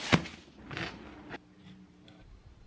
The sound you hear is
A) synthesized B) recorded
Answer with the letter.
B